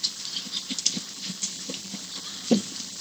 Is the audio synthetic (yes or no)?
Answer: yes